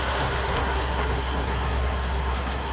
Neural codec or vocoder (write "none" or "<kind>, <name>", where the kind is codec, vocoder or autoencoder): codec, SNAC